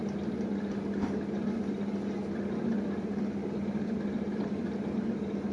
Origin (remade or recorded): recorded